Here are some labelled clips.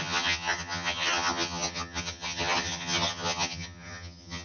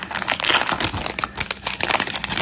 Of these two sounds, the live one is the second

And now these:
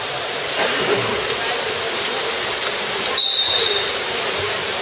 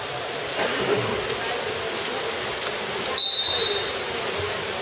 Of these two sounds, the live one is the second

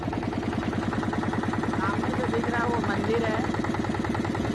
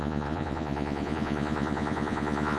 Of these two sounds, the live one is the first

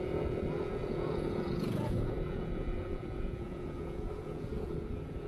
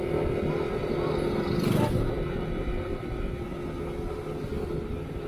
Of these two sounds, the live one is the second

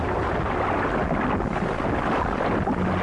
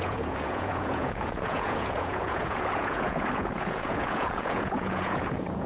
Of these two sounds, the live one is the first